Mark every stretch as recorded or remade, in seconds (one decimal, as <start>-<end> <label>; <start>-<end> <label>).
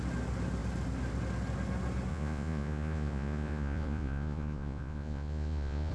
0.0-2.1 recorded; 2.1-5.9 remade